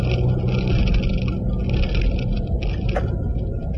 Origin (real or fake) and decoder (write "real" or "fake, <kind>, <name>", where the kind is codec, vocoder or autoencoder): real